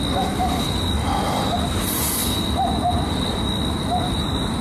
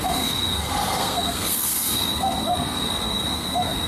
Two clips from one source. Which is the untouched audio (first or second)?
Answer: first